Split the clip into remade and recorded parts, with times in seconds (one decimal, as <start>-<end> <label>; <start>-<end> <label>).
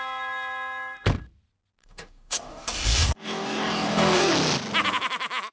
0.0-1.8 recorded; 1.8-4.3 remade; 4.3-5.5 recorded